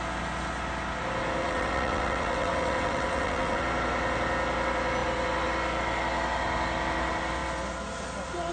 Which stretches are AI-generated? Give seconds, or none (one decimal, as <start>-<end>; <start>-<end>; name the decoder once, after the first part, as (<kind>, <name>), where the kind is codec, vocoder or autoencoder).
1.4-3.6 (vocoder, WaveNeXt)